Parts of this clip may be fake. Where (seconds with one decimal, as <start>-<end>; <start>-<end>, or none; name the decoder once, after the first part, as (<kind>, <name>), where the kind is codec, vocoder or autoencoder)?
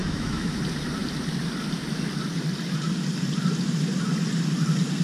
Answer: 0.0-0.6 (autoencoder, DAC-VAE)